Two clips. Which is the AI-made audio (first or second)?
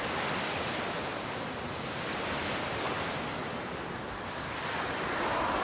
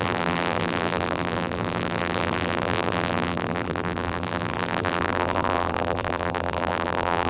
second